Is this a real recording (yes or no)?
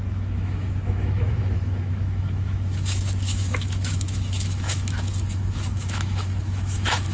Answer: no